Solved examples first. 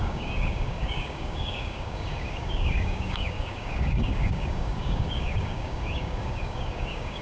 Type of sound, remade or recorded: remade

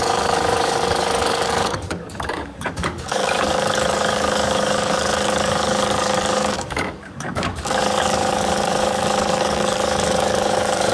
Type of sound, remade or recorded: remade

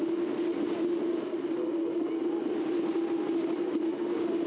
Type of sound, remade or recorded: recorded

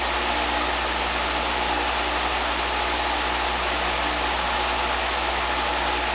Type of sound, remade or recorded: recorded